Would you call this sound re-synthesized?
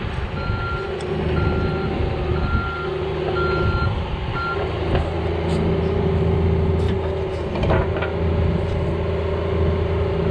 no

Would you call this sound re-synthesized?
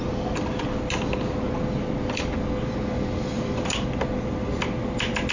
no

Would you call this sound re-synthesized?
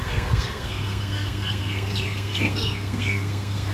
yes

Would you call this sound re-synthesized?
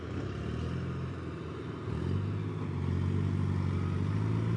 no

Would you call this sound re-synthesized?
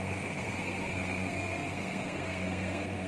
yes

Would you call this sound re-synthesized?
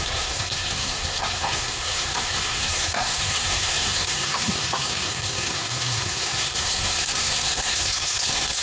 yes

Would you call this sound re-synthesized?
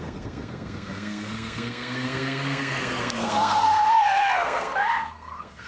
yes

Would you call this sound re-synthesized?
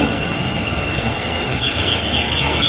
yes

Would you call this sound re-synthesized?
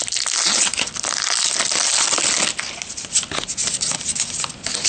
no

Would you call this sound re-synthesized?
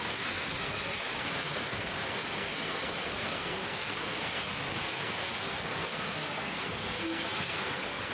yes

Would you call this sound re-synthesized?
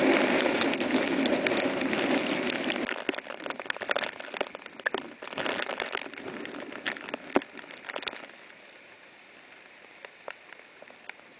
no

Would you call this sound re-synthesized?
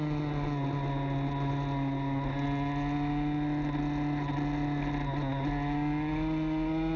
no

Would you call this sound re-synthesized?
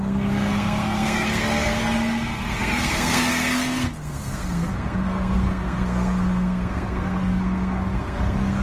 yes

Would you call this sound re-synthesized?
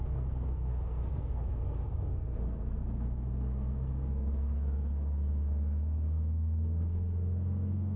yes